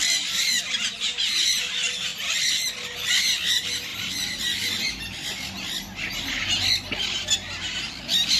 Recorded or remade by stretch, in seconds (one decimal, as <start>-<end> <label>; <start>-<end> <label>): 0.0-8.4 recorded